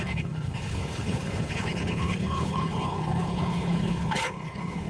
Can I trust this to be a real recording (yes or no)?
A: no